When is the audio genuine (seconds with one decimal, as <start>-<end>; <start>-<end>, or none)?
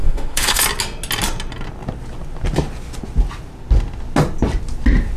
0.6-5.2